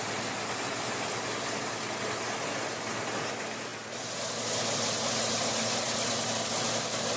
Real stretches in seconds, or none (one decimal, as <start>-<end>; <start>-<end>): 0.0-7.2